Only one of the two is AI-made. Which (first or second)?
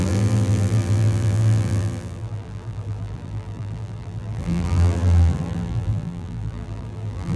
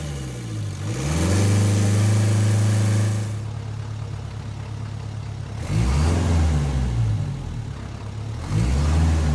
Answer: first